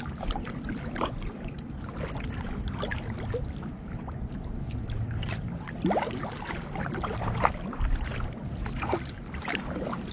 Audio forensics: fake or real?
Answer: real